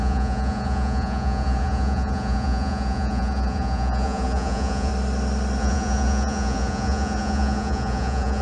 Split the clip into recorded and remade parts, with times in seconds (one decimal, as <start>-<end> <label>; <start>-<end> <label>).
0.0-4.9 remade; 4.9-5.6 recorded; 5.6-8.4 remade